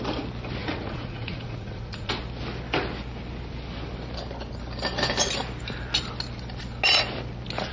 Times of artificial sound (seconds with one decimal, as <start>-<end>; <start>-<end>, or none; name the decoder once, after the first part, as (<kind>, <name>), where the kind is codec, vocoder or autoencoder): 0.6-2.1 (vocoder, Vocos)